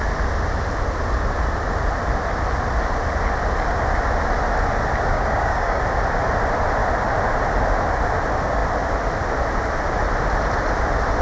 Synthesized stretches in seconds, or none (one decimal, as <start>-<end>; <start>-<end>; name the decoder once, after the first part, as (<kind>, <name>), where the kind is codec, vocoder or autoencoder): 5.1-5.8 (codec, DAC)